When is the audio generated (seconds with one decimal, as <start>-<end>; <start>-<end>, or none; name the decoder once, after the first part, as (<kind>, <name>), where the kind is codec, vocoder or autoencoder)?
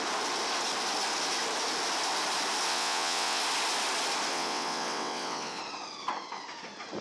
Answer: 2.7-3.4 (vocoder, WaveNeXt); 4.3-5.6